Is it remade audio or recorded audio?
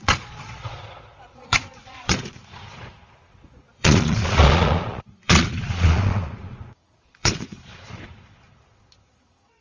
remade